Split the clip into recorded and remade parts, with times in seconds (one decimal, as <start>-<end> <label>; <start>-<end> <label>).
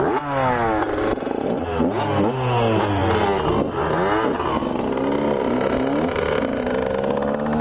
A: 0.0-7.6 recorded